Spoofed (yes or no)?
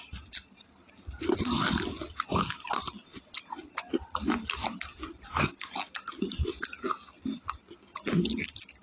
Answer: no